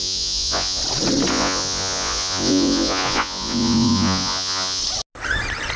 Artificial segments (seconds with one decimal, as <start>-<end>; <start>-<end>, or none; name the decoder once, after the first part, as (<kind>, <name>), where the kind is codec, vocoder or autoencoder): 0.0-0.8 (vocoder, Vocos); 1.3-4.8